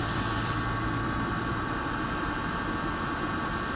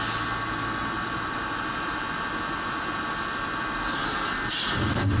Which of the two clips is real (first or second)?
second